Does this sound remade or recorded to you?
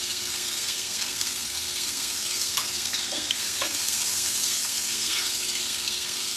remade